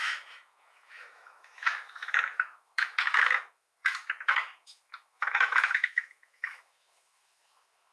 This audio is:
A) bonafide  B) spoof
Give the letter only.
B